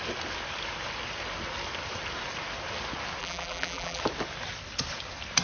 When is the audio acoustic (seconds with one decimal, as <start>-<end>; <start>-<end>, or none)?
0.0-3.2; 4.0-5.4